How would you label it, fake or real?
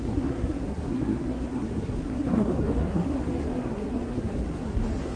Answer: fake